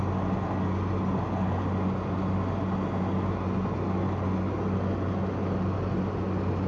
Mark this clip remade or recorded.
recorded